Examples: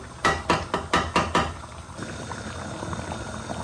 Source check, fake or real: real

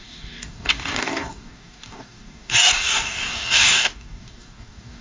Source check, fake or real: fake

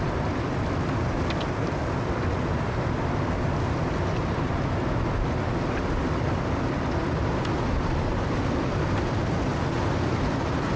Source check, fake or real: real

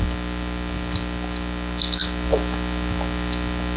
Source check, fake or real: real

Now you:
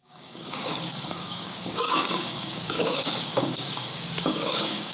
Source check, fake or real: fake